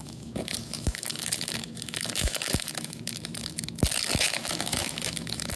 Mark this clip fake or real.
fake